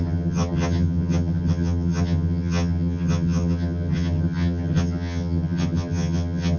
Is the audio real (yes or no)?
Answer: no